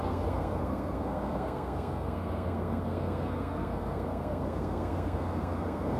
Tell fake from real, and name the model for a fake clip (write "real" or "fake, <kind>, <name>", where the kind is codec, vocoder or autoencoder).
fake, codec, SNAC